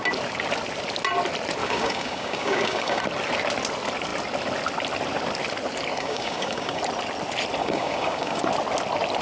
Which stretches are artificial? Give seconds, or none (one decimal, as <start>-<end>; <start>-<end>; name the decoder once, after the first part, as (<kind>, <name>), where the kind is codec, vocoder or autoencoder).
1.6-3.0 (codec, DAC); 5.9-6.8; 7.6-8.4